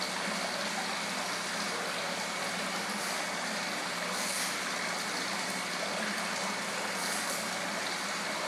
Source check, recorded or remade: recorded